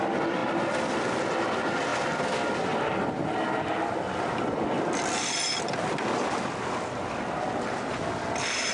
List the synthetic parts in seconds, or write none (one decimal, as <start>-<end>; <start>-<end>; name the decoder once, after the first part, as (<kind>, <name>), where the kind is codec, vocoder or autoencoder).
none